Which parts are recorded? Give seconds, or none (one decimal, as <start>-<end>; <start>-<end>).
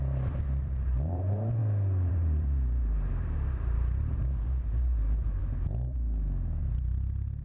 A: 1.6-2.1; 5.4-6.6